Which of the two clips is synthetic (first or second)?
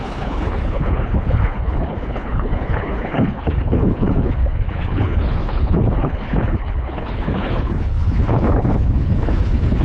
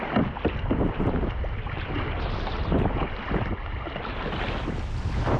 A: first